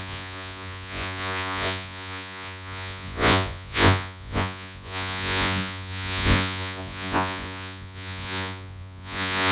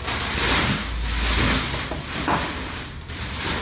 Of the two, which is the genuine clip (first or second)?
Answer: second